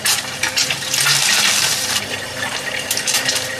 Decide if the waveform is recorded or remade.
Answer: remade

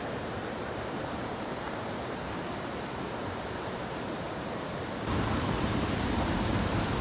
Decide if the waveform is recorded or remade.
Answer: remade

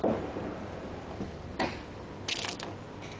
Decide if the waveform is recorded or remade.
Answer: recorded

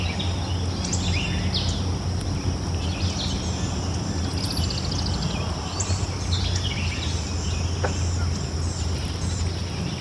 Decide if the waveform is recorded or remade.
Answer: recorded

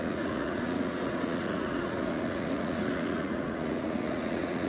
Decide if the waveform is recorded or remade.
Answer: remade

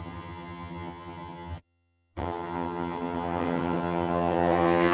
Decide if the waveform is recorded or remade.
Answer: remade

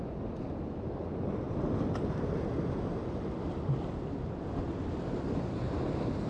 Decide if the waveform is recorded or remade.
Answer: recorded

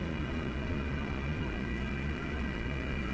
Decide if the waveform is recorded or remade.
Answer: remade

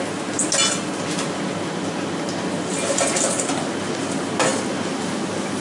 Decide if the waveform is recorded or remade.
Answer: recorded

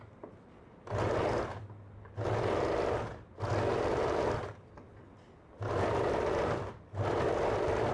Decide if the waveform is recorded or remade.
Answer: recorded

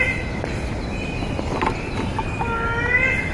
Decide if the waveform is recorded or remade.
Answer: recorded